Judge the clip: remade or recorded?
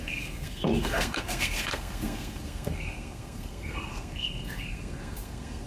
remade